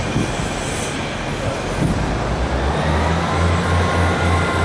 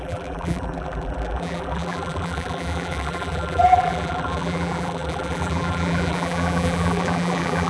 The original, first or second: first